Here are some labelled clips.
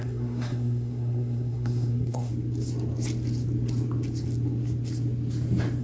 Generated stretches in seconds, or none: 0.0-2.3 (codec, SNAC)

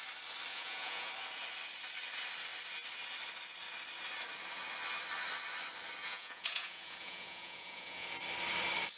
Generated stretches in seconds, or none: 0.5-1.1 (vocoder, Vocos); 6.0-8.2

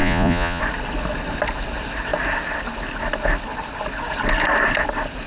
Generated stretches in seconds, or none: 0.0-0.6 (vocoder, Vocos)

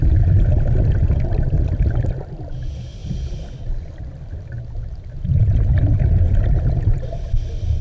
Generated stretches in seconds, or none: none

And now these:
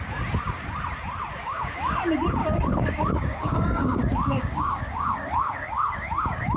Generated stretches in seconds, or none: 1.3-2.0 (codec, DAC); 2.4-6.6

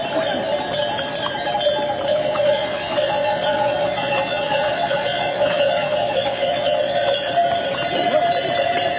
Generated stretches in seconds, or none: 2.1-7.3 (vocoder, Vocos)

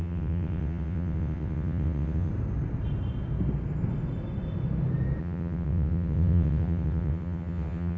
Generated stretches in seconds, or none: 0.0-2.3 (vocoder, WaveNeXt); 5.2-8.0